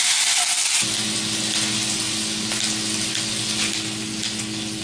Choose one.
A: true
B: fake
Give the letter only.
A